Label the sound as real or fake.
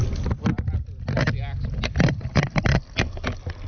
real